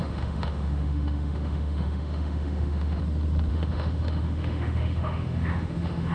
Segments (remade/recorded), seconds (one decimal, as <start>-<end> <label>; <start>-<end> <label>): 0.0-3.0 remade; 3.0-3.5 recorded; 3.5-6.1 remade